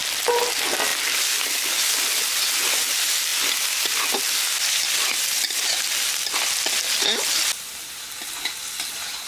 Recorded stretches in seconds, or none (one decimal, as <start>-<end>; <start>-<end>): 0.0-9.3